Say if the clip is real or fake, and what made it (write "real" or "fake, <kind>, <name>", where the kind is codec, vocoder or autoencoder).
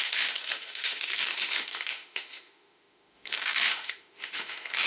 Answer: fake, autoencoder, DAC-VAE